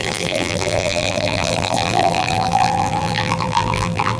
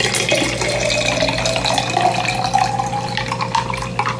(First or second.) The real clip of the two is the second